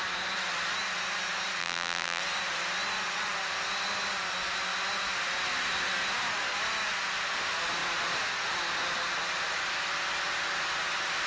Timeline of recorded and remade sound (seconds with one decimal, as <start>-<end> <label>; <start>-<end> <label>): 0.0-1.6 recorded; 1.6-2.2 remade; 2.2-11.3 recorded